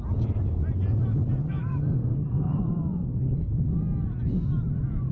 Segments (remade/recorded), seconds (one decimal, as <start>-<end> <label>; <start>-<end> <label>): 0.0-2.0 recorded; 2.0-2.6 remade; 2.6-5.1 recorded